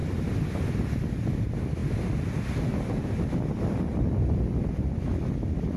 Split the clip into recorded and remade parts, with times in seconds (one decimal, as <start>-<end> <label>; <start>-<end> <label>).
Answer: 0.0-5.8 recorded